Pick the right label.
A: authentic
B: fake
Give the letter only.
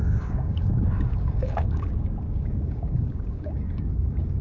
B